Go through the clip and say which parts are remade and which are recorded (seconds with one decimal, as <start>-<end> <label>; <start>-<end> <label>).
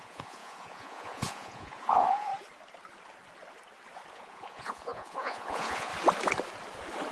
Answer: 0.0-2.3 remade; 2.3-4.1 recorded; 4.1-5.9 remade; 5.9-7.1 recorded